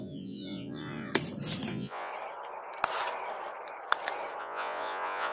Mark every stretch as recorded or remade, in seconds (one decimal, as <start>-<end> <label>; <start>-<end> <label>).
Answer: 0.0-1.1 remade; 1.1-1.7 recorded; 1.7-2.1 remade; 2.1-4.4 recorded; 4.4-5.3 remade